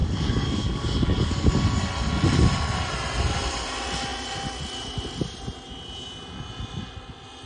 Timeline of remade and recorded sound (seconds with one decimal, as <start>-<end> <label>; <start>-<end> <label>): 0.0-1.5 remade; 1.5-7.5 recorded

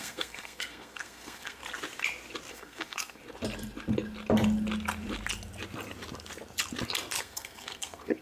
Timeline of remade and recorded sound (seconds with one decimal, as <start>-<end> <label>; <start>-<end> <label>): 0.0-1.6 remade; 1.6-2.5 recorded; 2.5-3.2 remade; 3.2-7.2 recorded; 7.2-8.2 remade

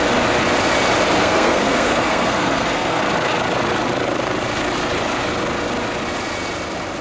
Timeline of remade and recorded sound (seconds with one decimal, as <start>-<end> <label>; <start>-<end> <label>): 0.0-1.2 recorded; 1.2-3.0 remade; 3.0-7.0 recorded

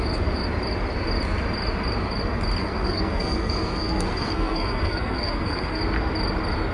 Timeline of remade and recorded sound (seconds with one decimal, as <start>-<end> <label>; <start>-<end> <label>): 0.0-2.6 recorded; 2.6-5.8 remade; 5.8-6.7 recorded

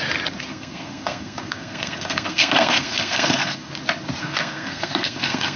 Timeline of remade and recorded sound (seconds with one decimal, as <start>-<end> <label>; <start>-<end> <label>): 0.0-0.5 recorded; 0.5-3.7 remade; 3.7-4.2 recorded; 4.2-5.6 remade

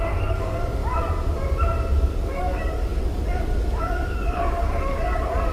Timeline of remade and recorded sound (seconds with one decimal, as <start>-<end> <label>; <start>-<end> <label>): 0.0-0.8 remade; 0.8-2.1 recorded; 2.1-5.5 remade

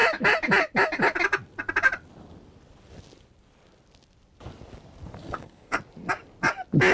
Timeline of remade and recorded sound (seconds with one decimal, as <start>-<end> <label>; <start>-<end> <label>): 0.0-5.2 recorded; 5.2-5.8 remade; 5.8-6.9 recorded